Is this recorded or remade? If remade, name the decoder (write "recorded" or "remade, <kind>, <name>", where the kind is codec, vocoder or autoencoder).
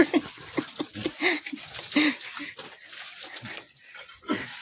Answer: recorded